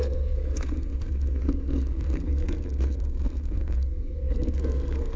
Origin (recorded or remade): remade